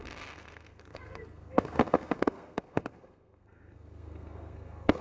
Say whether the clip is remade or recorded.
remade